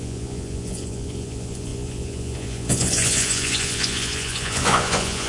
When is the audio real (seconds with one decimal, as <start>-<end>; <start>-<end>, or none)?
none